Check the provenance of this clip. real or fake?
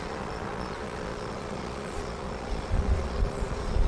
fake